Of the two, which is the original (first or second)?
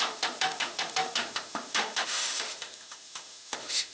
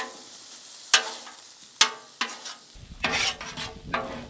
second